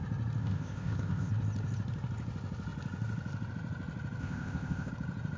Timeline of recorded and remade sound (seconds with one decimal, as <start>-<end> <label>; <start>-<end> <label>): 0.0-0.4 recorded; 0.4-1.3 remade; 1.3-4.2 recorded; 4.2-4.9 remade; 4.9-5.4 recorded